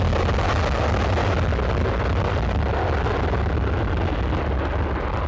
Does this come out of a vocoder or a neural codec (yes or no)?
no